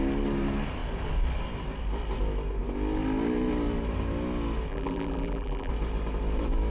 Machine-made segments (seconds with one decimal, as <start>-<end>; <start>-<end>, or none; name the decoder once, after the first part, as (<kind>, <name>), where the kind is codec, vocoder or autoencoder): 4.7-5.7 (vocoder, BigVGAN v2)

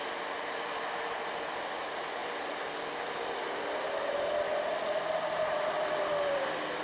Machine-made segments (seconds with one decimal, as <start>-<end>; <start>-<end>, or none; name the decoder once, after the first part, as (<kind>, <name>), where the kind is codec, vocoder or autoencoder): 0.0-2.2 (vocoder, BigVGAN v2); 6.3-6.8

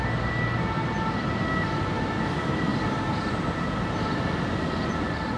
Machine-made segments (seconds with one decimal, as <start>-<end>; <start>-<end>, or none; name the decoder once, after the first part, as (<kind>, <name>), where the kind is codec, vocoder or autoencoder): 2.7-3.3 (vocoder, BigVGAN v2)

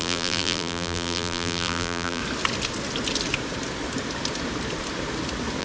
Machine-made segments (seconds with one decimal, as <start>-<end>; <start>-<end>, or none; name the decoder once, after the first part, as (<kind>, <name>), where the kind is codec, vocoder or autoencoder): 0.0-2.2 (vocoder, BigVGAN v2)

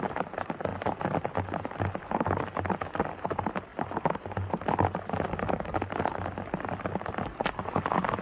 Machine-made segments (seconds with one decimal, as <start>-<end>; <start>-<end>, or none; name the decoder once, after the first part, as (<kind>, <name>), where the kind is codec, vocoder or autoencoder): none

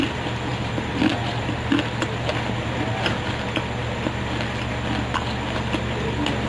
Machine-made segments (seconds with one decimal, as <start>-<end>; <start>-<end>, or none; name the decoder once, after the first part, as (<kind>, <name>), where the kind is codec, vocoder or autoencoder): none

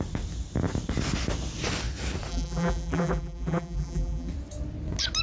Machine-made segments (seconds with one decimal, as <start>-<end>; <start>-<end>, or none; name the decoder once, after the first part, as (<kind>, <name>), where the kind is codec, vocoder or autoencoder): 2.3-4.3 (vocoder, BigVGAN v2)

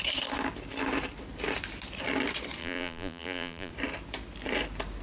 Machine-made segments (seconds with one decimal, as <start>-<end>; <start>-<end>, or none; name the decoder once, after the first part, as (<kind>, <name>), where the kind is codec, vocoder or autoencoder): 2.6-3.7 (vocoder, BigVGAN v2)